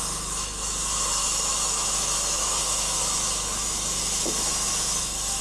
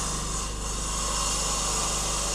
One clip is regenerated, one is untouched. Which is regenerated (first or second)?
first